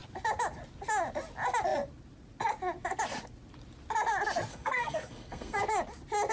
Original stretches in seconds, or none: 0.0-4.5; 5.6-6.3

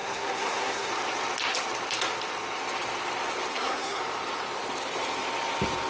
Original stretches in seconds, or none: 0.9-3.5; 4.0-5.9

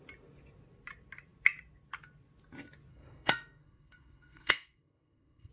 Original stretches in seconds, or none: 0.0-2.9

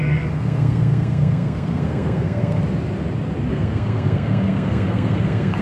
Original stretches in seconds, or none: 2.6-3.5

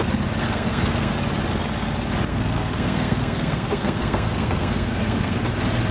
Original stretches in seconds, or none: 0.0-0.4; 1.1-2.3; 5.4-5.9

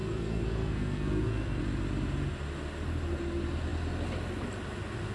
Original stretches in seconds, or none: 1.6-5.1

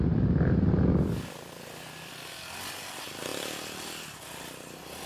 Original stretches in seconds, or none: 0.0-5.1

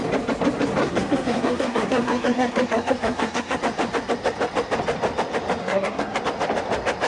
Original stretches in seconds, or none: 0.0-0.8; 3.6-5.6; 6.2-7.1